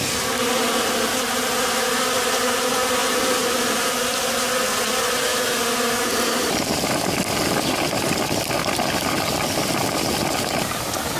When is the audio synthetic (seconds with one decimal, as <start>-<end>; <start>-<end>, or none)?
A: none

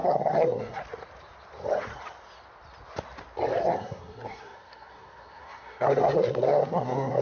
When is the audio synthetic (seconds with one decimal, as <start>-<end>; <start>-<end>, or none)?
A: 0.0-0.8; 3.6-7.2

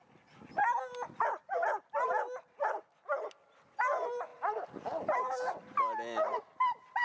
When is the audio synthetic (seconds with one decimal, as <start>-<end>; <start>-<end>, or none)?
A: none